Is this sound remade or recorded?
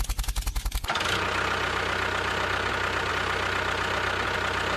recorded